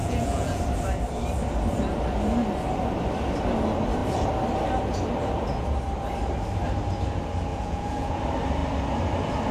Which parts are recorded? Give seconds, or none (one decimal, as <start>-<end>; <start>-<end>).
0.6-7.5; 8.2-9.5